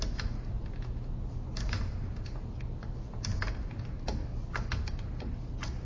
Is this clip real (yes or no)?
yes